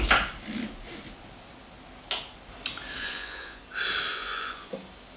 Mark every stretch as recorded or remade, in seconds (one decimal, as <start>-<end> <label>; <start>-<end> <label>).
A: 0.0-3.0 recorded; 3.0-3.6 remade; 3.6-4.1 recorded; 4.1-4.7 remade; 4.7-5.2 recorded